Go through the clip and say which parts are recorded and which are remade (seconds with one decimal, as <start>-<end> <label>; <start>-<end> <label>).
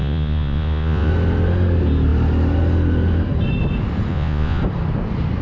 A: 0.0-1.1 remade; 1.1-4.1 recorded; 4.1-4.6 remade; 4.6-5.4 recorded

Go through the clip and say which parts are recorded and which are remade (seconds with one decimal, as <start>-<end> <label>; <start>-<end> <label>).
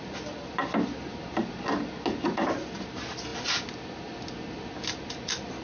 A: 0.0-5.6 recorded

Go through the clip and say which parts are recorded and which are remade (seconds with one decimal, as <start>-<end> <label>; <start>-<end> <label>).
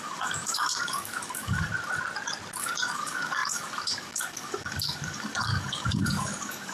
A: 0.0-1.7 remade; 1.7-2.6 recorded; 2.6-6.7 remade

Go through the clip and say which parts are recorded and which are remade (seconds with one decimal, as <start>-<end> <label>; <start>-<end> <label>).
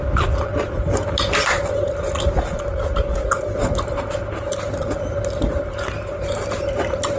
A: 0.0-7.2 recorded